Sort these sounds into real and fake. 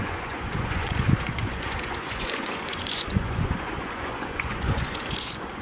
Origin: fake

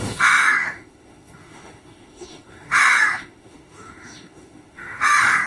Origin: fake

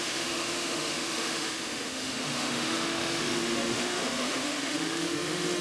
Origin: fake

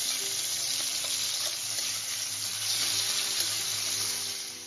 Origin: real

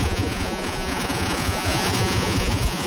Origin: fake